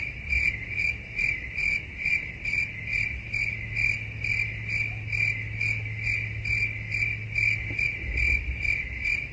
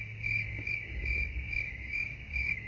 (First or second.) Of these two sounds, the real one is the first